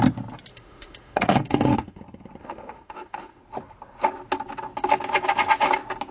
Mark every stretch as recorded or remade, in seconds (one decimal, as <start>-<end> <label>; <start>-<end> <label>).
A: 0.0-0.5 recorded; 0.5-2.0 remade; 2.0-2.4 recorded; 2.4-3.4 remade; 3.4-6.1 recorded